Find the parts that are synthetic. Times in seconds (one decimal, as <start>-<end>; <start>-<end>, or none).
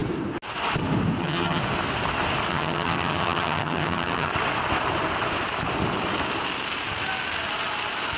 1.2-1.6; 2.5-4.3